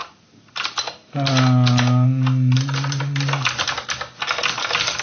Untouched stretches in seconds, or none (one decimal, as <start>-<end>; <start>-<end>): 0.0-5.0